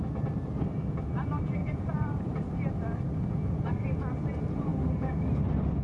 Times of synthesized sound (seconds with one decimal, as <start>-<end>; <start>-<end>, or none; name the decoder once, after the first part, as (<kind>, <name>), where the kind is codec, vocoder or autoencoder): 1.6-2.7 (vocoder, BigVGAN v2); 4.7-5.2